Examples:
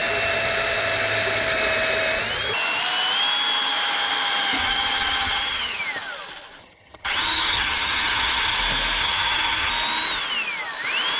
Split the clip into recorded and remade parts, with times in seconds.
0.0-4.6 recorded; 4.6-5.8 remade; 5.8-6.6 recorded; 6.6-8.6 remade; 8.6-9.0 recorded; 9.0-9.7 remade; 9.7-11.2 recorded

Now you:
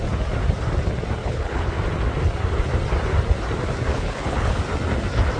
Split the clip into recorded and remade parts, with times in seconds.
0.0-1.2 recorded; 1.2-1.7 remade; 1.7-3.9 recorded; 3.9-4.6 remade; 4.6-5.4 recorded

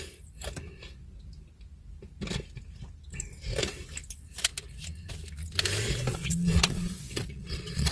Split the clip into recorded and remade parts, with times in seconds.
0.0-6.1 recorded; 6.1-7.9 remade